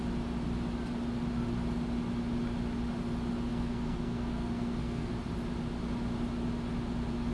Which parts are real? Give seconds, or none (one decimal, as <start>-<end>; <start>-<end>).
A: 0.0-3.5; 5.1-7.3